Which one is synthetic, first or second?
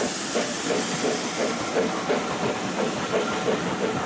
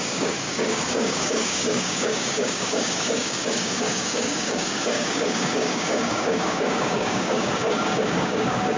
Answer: second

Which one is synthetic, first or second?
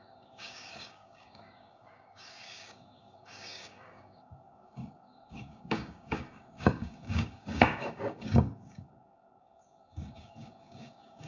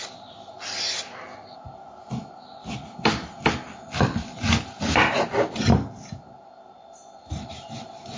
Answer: first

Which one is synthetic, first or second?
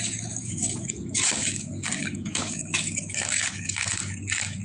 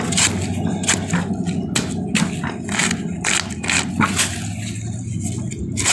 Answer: first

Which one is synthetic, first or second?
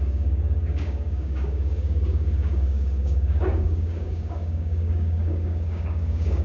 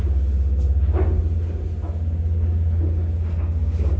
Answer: first